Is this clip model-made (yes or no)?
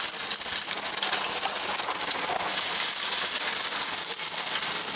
no